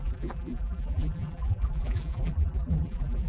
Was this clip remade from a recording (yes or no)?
yes